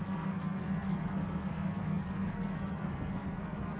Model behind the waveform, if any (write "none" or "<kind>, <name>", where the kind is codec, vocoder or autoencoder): codec, SNAC